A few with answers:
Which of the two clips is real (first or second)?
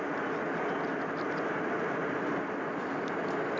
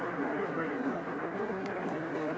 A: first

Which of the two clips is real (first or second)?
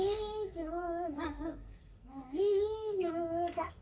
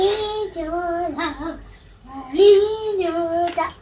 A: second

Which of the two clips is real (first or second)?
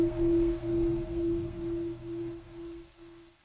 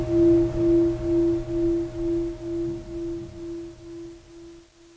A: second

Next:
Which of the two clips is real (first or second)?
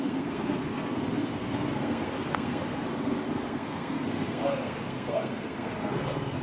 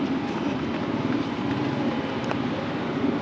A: second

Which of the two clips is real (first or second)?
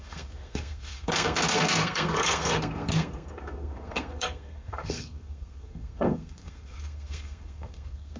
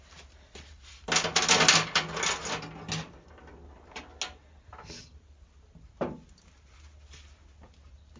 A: second